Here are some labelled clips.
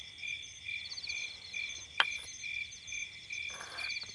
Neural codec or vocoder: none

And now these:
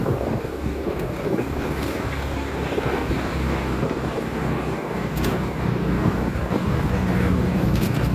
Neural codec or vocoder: codec, DAC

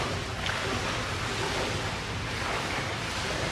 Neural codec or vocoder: none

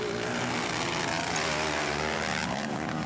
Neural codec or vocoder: none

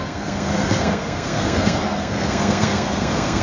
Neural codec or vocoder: codec, SNAC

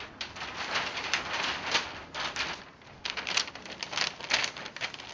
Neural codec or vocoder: none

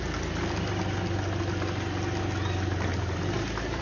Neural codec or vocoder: none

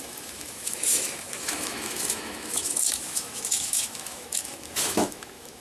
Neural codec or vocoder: autoencoder, DAC-VAE